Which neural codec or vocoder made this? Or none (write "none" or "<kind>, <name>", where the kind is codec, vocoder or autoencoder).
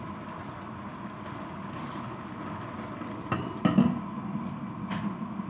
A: none